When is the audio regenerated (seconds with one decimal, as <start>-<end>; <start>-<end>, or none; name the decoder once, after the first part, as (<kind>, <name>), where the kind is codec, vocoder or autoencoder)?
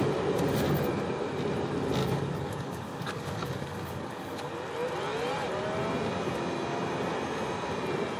2.0-4.5 (codec, DAC)